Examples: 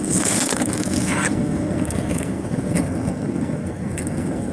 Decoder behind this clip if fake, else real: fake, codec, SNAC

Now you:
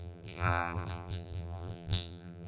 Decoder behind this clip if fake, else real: fake, vocoder, BigVGAN v2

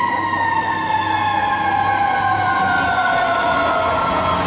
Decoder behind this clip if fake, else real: real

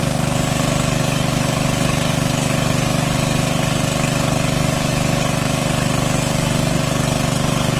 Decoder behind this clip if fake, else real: fake, codec, DAC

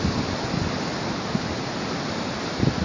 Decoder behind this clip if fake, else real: real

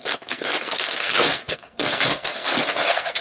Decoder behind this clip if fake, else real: fake, codec, SNAC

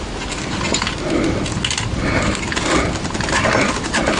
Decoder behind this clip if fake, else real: real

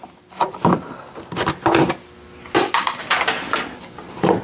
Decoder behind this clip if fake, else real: real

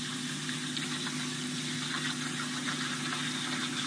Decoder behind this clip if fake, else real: real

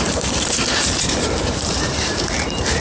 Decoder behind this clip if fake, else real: fake, vocoder, BigVGAN v2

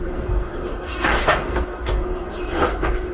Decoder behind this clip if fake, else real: fake, codec, SNAC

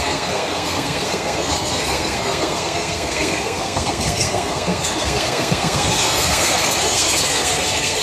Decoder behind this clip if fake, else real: fake, codec, SNAC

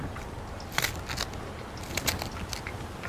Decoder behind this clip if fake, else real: real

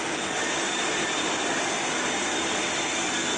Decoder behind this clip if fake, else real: real